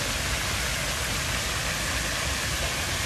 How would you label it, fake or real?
real